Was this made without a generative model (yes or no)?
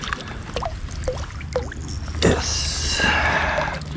yes